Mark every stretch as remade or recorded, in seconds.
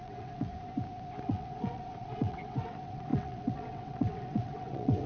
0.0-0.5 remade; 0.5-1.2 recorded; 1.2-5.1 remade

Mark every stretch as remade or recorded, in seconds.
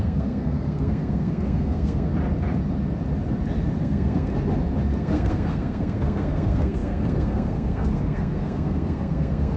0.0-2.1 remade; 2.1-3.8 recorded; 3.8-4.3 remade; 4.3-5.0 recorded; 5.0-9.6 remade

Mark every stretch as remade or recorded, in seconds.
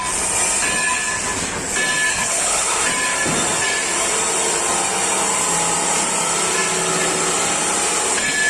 0.0-2.1 recorded; 2.1-2.8 remade; 2.8-8.5 recorded